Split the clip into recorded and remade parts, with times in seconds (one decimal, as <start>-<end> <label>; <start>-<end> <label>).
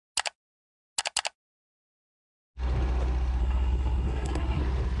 0.0-3.4 recorded; 3.4-4.6 remade; 4.6-5.0 recorded